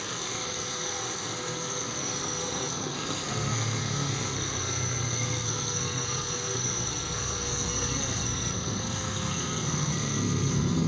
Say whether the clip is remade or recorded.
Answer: remade